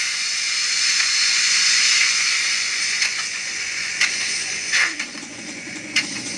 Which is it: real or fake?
fake